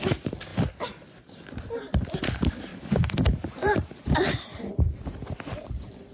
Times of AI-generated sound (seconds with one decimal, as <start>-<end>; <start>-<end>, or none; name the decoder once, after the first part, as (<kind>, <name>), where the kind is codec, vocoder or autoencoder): 2.7-5.1 (vocoder, BigVGAN v2)